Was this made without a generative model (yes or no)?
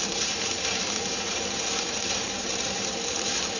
no